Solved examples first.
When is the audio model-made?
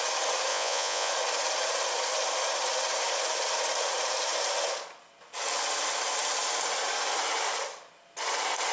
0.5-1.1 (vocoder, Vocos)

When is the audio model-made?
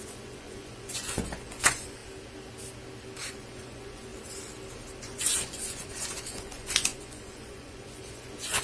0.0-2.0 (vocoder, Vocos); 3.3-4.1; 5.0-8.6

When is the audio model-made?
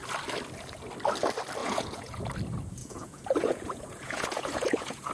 1.6-2.2 (vocoder, Vocos); 2.8-5.1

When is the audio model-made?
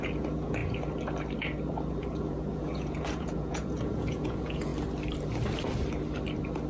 0.0-0.6 (vocoder, Vocos); 2.0-4.7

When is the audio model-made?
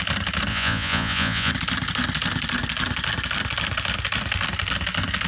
0.5-1.5 (vocoder, Vocos)